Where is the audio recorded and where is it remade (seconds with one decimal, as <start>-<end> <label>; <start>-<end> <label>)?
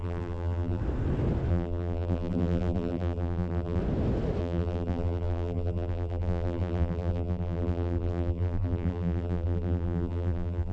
0.0-0.8 remade; 0.8-1.5 recorded; 1.5-3.8 remade; 3.8-4.4 recorded; 4.4-10.7 remade